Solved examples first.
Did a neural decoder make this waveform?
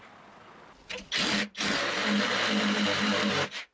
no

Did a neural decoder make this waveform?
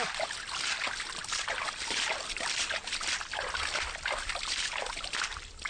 no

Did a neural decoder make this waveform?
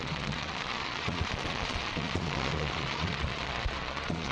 yes